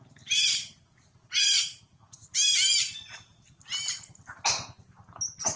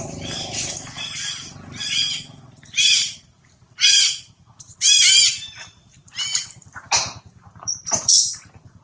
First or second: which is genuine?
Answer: first